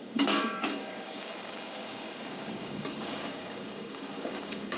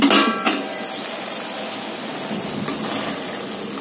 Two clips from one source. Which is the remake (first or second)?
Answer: first